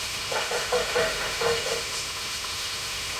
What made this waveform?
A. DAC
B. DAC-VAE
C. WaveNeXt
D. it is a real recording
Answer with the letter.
B